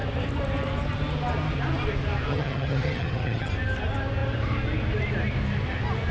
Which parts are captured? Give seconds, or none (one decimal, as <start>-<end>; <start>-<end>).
0.0-2.3; 3.5-6.1